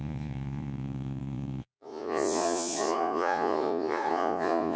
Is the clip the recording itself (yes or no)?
no